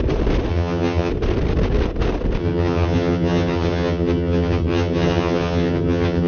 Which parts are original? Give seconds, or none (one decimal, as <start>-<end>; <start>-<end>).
0.0-0.5; 1.1-2.4